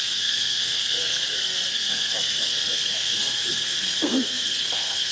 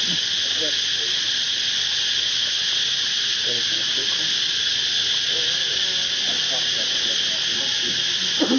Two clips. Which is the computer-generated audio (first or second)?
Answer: first